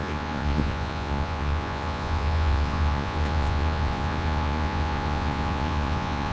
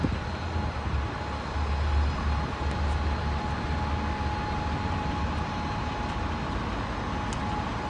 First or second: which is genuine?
second